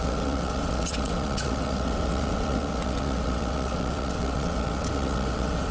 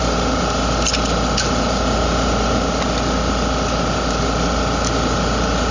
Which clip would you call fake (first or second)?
first